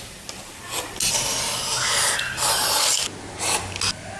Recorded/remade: recorded